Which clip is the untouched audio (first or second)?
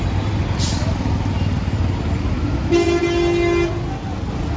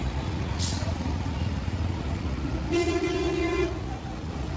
first